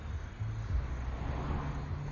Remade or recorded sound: recorded